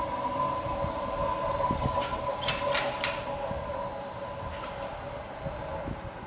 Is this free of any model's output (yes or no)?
yes